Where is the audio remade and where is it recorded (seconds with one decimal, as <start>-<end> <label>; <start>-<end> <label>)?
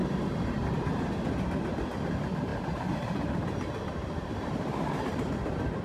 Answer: 0.0-2.5 recorded; 2.5-5.8 remade